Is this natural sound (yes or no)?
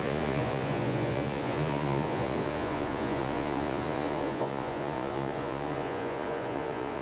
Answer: no